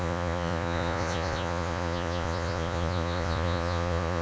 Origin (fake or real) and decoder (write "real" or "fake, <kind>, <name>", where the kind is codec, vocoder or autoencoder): fake, vocoder, Vocos